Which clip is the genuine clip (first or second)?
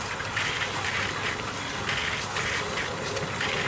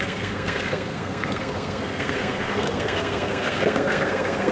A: first